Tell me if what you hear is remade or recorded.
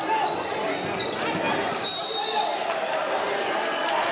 recorded